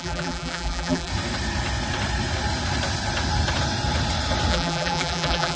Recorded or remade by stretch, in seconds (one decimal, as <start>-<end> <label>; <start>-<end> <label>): 0.0-1.1 remade; 1.1-4.5 recorded; 4.5-5.6 remade